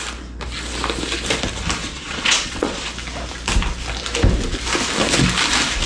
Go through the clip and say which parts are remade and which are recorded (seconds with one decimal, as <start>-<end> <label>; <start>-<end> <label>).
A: 0.0-1.8 recorded; 1.8-2.9 remade; 2.9-5.9 recorded